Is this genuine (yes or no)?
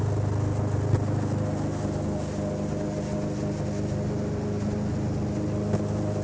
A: yes